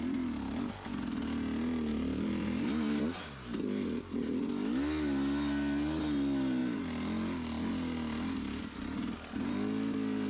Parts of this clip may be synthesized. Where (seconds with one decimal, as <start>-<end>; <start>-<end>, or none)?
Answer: 1.9-3.0